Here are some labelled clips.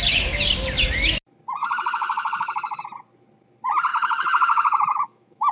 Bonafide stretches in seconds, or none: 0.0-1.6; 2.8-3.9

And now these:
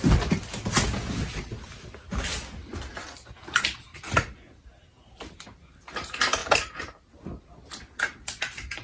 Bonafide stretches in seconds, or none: 0.0-8.8

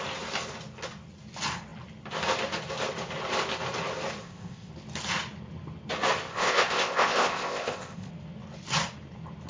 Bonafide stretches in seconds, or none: 0.0-4.2; 4.7-6.3; 8.1-9.5

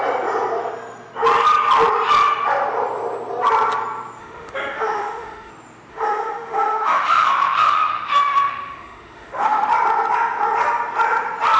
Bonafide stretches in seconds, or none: 0.0-4.2; 5.5-5.9; 9.7-11.6

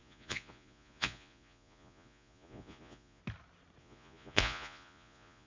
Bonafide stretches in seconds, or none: 3.2-3.8

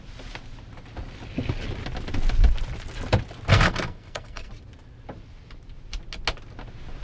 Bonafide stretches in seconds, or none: 0.0-3.5; 4.5-7.0

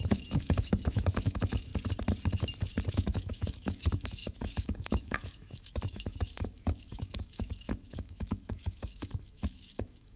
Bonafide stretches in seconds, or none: 1.7-2.9